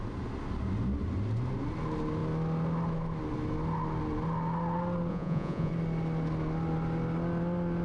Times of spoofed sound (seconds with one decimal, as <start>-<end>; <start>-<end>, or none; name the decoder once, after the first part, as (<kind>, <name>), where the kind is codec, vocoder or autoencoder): 5.1-5.7 (vocoder, Vocos)